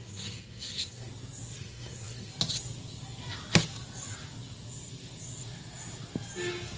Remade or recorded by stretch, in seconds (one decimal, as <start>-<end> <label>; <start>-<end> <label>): 0.0-1.1 remade; 1.1-1.6 recorded; 1.6-2.3 remade; 2.3-6.8 recorded